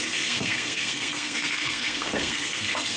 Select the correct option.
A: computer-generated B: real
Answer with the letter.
A